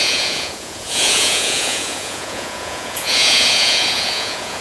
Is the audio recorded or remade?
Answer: remade